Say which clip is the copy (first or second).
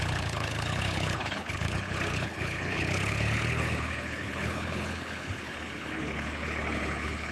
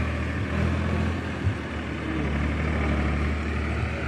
first